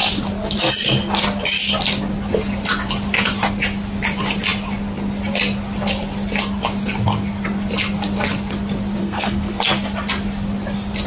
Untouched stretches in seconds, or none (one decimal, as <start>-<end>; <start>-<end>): 0.0-9.0; 9.5-11.1